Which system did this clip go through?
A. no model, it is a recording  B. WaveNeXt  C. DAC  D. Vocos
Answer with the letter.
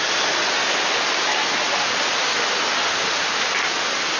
A